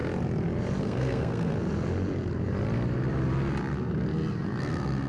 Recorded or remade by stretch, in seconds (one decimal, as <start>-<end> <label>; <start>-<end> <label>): 0.0-0.8 recorded; 0.8-1.5 remade; 1.5-4.6 recorded; 4.6-5.1 remade